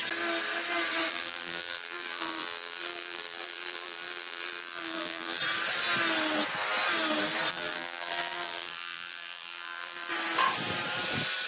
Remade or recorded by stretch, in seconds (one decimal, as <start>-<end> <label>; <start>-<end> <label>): 0.0-1.1 recorded; 1.1-5.4 remade; 5.4-7.5 recorded; 7.5-10.1 remade; 10.1-11.5 recorded